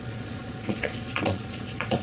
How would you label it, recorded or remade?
remade